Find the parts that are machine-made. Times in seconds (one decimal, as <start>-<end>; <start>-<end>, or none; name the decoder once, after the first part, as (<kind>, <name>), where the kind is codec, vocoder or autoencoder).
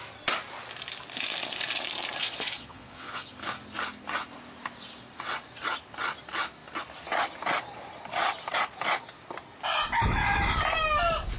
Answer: 2.2-3.3 (vocoder, Vocos)